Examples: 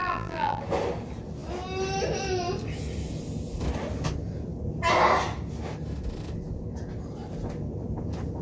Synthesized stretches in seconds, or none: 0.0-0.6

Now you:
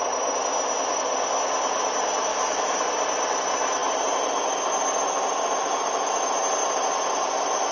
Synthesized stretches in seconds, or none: 2.3-2.8